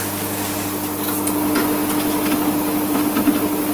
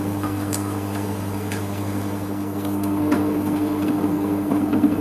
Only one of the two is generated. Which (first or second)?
second